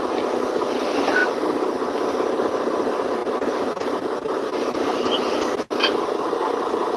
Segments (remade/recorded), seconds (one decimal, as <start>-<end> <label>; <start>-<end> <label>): 0.0-7.0 recorded